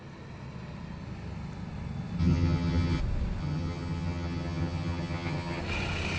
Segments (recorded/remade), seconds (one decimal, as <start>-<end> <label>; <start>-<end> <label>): 0.0-2.2 recorded; 2.2-3.0 remade; 3.0-3.4 recorded; 3.4-5.6 remade; 5.6-6.2 recorded